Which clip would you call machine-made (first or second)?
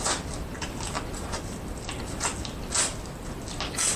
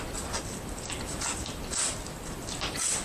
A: second